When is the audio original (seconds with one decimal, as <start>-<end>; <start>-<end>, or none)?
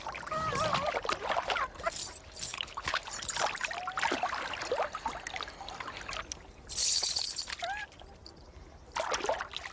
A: 0.0-2.5; 3.0-6.8; 7.4-9.7